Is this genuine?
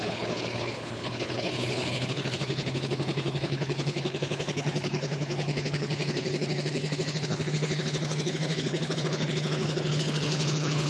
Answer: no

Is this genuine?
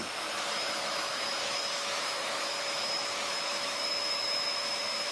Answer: no